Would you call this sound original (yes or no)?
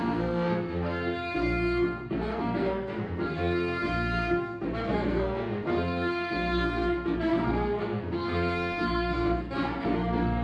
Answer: no